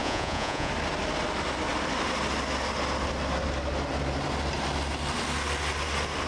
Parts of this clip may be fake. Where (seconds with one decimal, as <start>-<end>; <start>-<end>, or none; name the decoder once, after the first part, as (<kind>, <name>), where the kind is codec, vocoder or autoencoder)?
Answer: 0.0-0.7 (vocoder, Vocos)

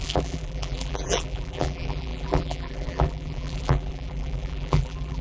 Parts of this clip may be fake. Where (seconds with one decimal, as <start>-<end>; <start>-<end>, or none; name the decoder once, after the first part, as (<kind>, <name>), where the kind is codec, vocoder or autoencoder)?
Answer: 0.0-5.2 (vocoder, BigVGAN v2)

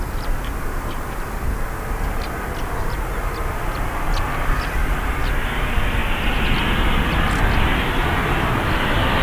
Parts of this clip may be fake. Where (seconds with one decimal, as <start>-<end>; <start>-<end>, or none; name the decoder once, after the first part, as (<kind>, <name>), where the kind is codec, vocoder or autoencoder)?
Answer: none